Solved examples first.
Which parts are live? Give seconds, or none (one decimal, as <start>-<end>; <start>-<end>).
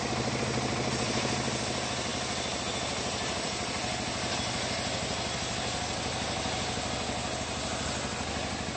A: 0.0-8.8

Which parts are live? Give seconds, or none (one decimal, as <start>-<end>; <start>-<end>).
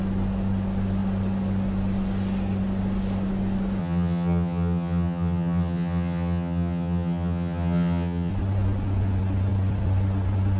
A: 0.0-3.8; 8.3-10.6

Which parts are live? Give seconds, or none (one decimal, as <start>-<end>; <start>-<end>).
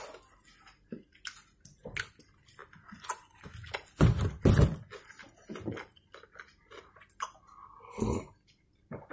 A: 0.0-9.1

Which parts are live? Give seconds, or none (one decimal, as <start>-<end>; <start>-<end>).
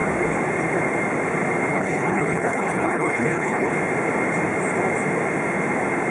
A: 0.0-1.7; 3.7-6.1